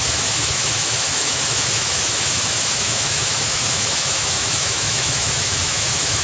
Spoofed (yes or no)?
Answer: yes